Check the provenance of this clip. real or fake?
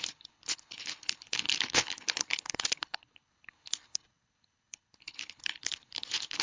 fake